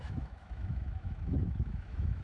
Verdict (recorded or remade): remade